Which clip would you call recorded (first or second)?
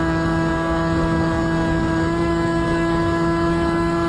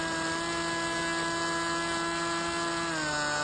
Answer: second